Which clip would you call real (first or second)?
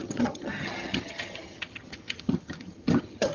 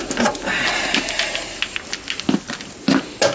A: second